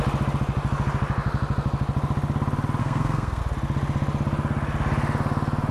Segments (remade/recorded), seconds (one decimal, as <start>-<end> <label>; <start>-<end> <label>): 0.0-2.8 recorded; 2.8-3.4 remade; 3.4-5.7 recorded